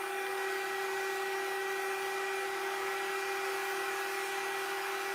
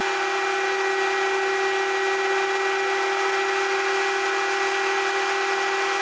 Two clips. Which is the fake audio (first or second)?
first